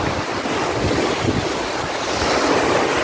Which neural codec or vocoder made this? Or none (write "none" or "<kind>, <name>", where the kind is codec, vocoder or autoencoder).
none